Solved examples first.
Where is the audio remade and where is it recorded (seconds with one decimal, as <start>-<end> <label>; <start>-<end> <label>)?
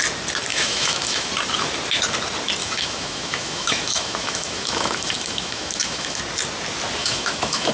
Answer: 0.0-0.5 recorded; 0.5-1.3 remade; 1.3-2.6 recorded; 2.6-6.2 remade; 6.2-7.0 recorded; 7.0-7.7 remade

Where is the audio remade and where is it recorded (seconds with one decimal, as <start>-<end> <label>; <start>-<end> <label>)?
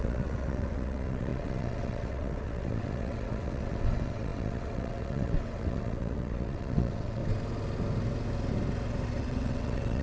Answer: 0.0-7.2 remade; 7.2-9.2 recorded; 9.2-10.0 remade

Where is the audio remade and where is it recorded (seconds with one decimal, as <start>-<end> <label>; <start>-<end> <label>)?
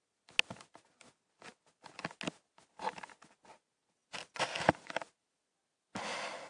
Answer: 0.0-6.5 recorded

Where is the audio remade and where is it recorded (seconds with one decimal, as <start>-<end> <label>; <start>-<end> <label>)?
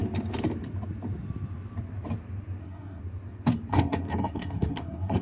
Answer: 0.0-2.6 recorded; 2.6-3.0 remade; 3.0-3.7 recorded; 3.7-5.2 remade